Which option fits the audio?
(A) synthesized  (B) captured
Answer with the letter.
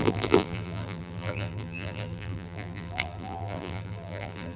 A